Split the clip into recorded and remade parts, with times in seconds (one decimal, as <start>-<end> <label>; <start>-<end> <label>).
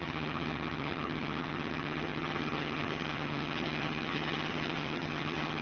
0.0-5.6 remade